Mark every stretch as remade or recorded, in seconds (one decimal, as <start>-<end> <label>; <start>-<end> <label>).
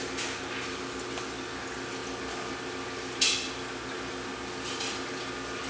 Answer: 0.0-5.7 recorded